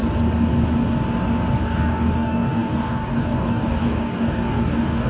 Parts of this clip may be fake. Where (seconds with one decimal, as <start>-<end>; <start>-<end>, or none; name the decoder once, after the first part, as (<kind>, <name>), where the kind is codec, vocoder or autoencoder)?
1.5-5.1 (codec, DAC)